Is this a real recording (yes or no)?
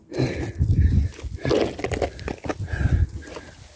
yes